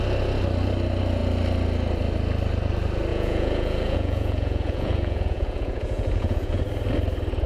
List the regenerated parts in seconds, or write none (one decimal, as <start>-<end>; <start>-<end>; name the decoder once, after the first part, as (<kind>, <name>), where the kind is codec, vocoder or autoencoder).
3.1-6.6 (vocoder, Vocos)